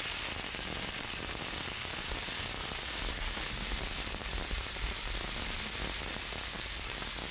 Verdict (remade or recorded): recorded